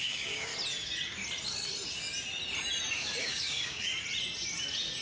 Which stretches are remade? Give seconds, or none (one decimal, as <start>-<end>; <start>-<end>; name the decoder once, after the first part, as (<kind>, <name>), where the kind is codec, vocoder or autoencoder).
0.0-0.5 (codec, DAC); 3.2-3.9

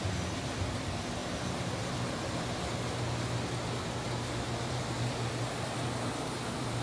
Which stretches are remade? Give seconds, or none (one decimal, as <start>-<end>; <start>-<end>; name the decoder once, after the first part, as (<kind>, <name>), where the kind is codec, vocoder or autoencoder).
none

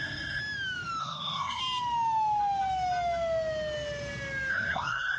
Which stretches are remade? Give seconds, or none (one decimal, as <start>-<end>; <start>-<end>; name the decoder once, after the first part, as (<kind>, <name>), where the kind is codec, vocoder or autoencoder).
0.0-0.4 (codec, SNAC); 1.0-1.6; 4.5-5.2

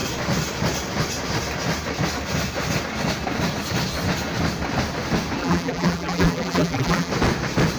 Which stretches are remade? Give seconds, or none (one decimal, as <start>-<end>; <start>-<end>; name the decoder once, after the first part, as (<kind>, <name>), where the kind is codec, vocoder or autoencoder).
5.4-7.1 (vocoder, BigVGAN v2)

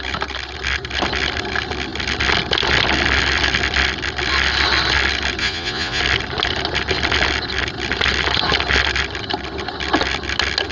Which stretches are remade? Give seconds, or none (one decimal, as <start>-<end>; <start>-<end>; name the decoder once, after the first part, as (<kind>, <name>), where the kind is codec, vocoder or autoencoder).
5.4-6.0 (vocoder, Vocos)